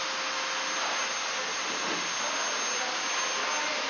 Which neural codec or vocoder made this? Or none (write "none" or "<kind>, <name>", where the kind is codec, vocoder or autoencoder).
none